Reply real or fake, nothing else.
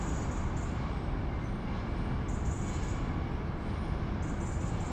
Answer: real